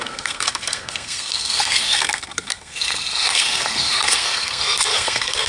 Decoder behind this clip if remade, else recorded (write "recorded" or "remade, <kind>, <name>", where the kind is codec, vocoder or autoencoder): remade, codec, SNAC